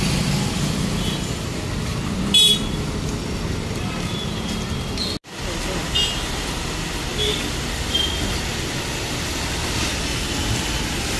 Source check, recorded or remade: recorded